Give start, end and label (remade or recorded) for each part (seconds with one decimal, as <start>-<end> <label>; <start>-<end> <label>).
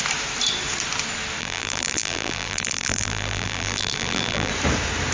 0.0-1.4 recorded; 1.4-4.5 remade; 4.5-5.1 recorded